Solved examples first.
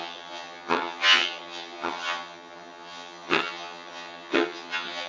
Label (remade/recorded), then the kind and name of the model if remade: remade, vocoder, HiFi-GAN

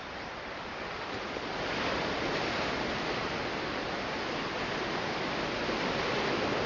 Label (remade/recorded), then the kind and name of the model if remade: recorded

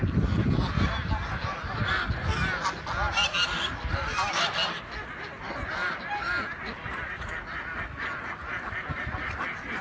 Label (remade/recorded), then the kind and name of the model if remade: recorded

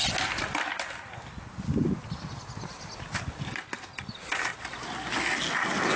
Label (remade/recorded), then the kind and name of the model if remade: recorded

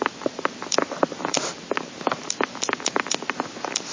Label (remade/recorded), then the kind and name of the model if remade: recorded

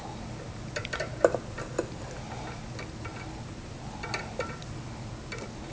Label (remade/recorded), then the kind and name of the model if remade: recorded